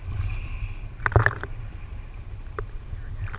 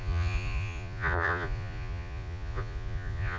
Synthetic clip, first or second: second